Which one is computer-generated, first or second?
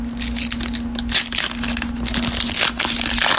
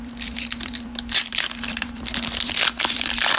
second